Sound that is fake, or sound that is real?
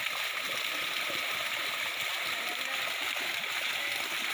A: real